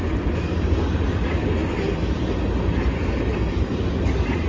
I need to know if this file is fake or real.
real